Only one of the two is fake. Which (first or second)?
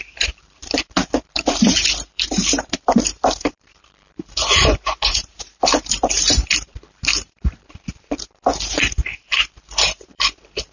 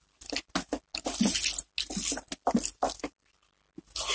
first